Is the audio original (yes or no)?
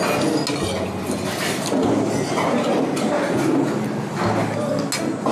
yes